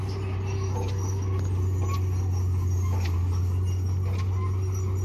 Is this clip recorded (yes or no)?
yes